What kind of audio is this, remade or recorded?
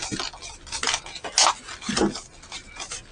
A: recorded